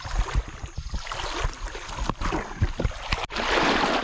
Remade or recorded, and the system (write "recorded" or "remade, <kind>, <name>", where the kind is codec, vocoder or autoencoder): recorded